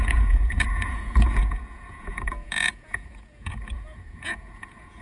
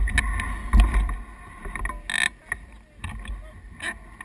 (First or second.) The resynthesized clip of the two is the first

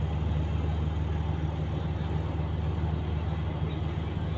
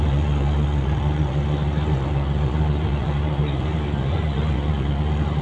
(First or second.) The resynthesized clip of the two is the second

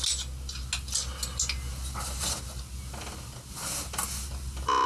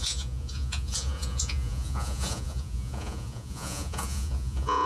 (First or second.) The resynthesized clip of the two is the second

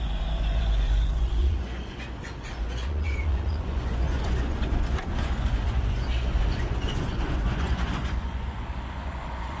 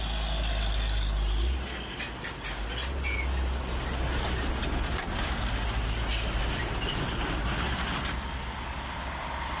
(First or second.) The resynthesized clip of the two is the first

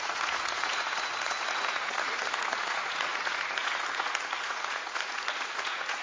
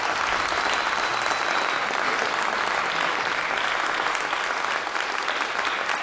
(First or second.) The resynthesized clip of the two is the first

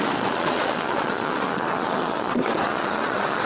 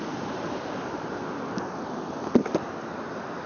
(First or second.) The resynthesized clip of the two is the first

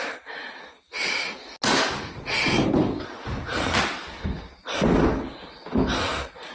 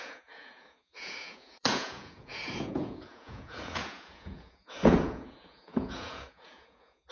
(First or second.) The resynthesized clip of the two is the second